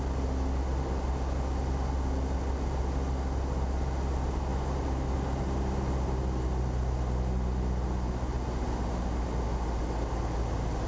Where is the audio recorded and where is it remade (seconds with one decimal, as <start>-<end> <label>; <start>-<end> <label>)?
0.0-10.9 recorded